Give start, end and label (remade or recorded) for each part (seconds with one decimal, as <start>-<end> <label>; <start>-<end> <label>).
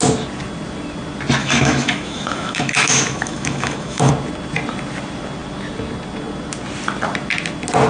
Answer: 0.0-1.4 recorded; 1.4-4.1 remade; 4.1-7.9 recorded